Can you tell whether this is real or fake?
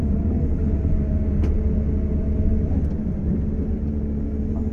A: real